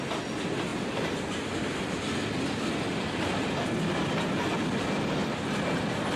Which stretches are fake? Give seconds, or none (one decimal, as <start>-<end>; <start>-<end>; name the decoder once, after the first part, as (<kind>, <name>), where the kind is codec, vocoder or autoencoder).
none